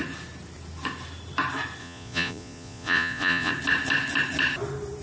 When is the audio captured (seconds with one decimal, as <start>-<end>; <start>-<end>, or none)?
0.0-1.8; 3.5-5.0